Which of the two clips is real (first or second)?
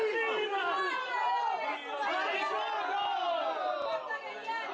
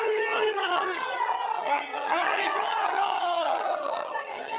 first